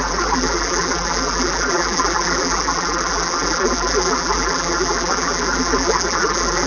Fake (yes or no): yes